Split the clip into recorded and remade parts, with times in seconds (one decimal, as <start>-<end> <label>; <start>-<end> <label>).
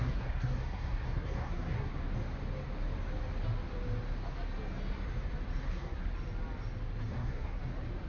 0.0-1.9 remade; 1.9-5.6 recorded; 5.6-6.1 remade; 6.1-7.1 recorded; 7.1-7.6 remade; 7.6-8.1 recorded